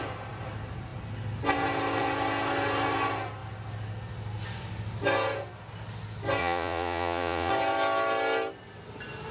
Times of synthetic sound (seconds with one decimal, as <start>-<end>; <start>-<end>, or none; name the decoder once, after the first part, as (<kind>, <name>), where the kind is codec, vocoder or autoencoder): 6.4-7.5 (vocoder, Vocos)